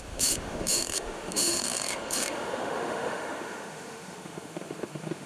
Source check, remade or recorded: remade